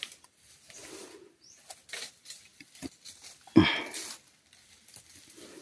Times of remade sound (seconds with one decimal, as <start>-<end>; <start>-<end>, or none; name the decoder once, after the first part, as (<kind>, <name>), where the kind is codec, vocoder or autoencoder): none